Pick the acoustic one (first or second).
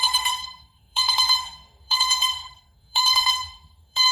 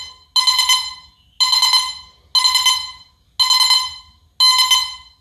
second